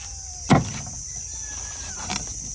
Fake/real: real